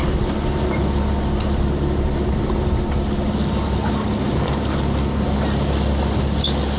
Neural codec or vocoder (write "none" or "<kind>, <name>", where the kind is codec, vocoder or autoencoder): none